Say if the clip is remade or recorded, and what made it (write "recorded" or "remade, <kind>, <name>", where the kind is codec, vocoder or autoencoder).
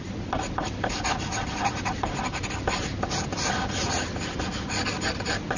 recorded